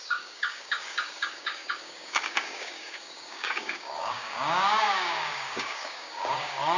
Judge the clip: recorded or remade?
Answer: remade